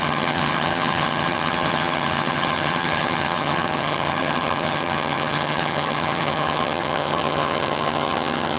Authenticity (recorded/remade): remade